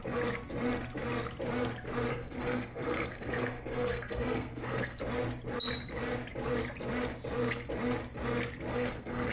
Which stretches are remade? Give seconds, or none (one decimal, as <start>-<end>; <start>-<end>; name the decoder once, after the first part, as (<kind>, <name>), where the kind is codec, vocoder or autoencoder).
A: 2.1-5.0 (codec, SNAC); 8.7-9.3